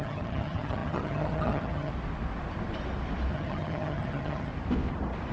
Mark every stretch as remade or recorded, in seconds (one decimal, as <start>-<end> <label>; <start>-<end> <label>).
0.0-1.9 remade; 1.9-3.3 recorded; 3.3-4.5 remade; 4.5-5.3 recorded